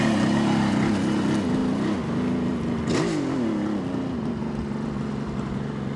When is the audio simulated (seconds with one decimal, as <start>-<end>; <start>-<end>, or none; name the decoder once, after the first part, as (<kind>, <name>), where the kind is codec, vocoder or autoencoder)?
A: none